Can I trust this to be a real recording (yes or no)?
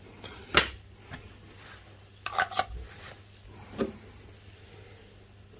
yes